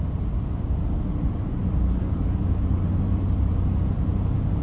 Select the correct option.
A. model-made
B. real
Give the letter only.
B